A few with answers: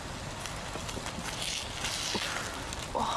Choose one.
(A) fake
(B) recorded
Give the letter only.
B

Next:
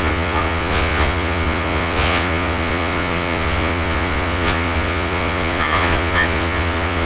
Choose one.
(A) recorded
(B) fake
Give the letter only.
B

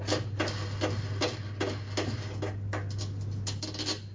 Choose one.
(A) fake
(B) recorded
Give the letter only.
B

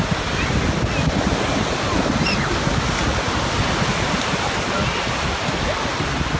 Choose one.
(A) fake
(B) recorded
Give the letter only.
B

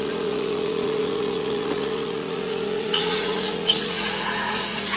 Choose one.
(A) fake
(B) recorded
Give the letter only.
A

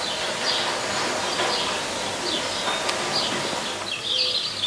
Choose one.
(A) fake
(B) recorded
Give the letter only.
B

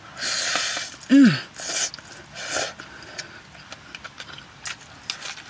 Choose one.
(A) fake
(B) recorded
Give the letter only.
B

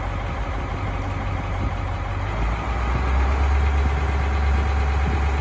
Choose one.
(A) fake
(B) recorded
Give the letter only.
B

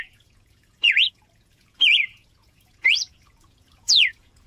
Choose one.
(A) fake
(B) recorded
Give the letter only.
A